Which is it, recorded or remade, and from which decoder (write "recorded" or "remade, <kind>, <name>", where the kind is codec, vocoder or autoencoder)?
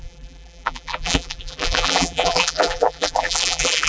remade, vocoder, BigVGAN v2